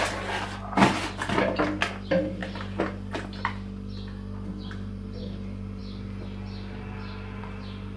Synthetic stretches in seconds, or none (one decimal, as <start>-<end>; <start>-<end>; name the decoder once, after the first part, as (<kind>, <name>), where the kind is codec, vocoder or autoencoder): none